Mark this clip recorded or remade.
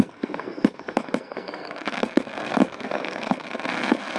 remade